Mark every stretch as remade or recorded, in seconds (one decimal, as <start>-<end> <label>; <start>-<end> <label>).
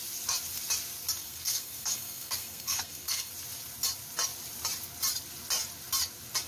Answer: 0.0-1.2 recorded; 1.2-3.3 remade; 3.3-6.5 recorded